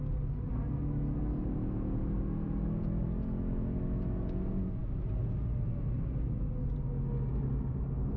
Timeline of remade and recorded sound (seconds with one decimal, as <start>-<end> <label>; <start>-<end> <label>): 0.0-8.2 recorded